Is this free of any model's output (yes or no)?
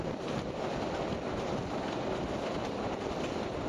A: no